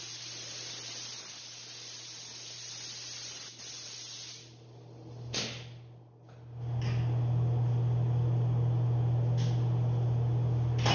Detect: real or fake real